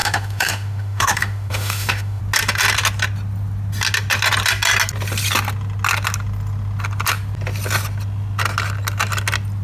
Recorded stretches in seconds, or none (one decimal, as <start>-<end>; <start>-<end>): 2.2-9.6